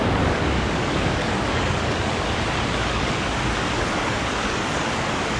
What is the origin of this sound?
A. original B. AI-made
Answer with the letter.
B